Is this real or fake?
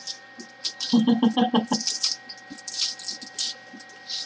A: real